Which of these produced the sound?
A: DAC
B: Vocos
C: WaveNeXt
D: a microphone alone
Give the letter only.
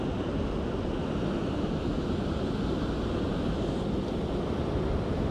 D